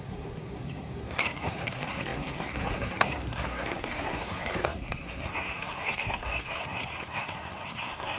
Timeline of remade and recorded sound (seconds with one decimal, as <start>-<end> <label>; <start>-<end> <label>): 0.0-8.2 remade